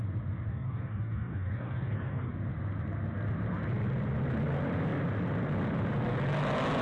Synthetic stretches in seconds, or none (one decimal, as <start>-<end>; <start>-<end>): 0.5-2.3